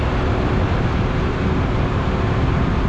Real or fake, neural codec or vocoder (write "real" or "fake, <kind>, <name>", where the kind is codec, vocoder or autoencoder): real